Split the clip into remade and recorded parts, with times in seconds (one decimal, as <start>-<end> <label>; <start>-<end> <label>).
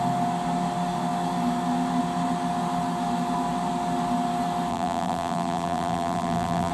0.0-4.7 recorded; 4.7-6.7 remade